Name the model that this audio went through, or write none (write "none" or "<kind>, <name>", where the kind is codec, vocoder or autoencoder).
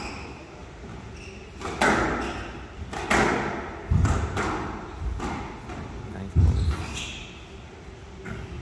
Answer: none